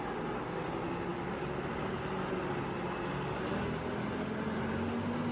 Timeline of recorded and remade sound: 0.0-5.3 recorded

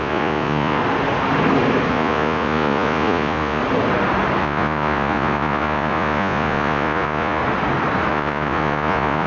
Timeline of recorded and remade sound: 0.0-0.8 remade; 0.8-1.9 recorded; 1.9-3.6 remade; 3.6-4.4 recorded; 4.4-7.4 remade; 7.4-8.1 recorded; 8.1-9.3 remade

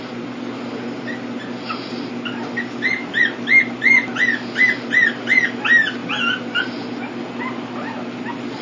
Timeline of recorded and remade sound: 0.0-8.6 recorded